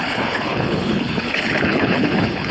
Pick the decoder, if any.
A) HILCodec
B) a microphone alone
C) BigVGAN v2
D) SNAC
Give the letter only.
A